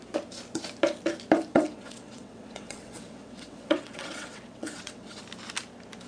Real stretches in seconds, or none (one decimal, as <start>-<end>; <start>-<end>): 0.0-1.5; 5.2-6.1